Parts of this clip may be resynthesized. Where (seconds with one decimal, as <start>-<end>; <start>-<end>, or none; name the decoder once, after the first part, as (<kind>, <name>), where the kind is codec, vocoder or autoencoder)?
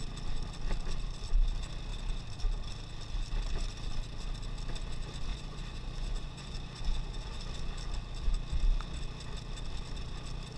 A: 5.3-7.4 (vocoder, Vocos)